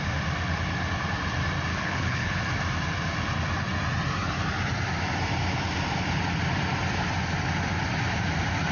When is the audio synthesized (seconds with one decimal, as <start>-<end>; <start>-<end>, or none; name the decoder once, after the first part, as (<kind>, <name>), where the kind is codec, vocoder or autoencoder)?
1.7-2.4 (codec, HILCodec)